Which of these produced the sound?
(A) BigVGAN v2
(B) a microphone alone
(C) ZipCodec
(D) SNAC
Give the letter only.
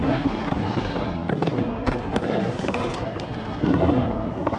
D